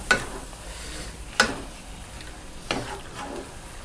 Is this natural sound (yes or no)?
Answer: yes